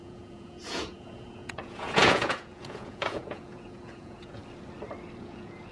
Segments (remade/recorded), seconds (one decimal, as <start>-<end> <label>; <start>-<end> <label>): 0.0-4.4 remade; 4.4-5.2 recorded; 5.2-5.7 remade